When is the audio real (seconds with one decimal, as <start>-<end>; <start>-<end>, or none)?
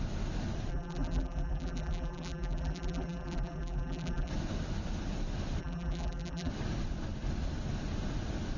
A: 0.0-0.7; 4.3-5.6; 6.5-8.6